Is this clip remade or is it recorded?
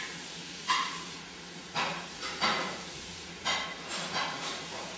remade